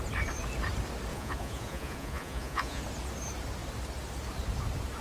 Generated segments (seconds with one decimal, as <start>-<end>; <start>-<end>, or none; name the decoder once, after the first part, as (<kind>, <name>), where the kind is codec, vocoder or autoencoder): 1.1-2.8 (vocoder, Vocos)